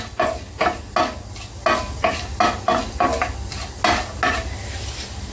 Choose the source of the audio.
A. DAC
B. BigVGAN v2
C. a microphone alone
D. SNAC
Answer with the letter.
C